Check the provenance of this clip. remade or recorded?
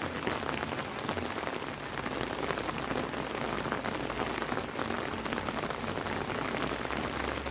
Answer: recorded